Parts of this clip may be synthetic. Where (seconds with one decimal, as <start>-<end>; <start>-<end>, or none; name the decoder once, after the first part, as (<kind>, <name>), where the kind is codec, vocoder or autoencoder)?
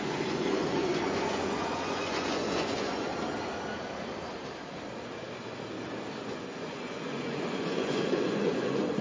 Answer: 0.0-3.1 (vocoder, Vocos); 6.2-9.0